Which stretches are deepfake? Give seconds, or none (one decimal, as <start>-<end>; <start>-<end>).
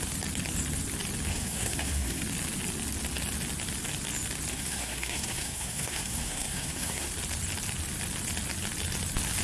1.3-2.2; 4.5-7.1